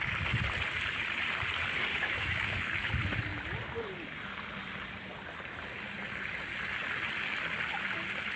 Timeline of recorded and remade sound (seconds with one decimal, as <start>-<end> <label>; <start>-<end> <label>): 0.0-1.9 recorded; 1.9-2.9 remade; 2.9-8.4 recorded